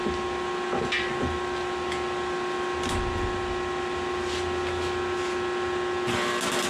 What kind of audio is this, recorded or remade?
recorded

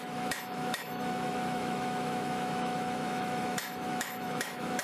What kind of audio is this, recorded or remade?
remade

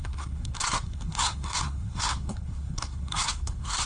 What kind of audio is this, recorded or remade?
remade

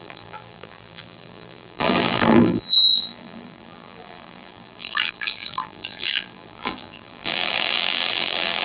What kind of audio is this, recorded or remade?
remade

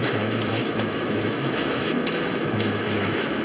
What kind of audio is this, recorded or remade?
remade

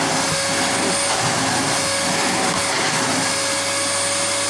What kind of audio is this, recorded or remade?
recorded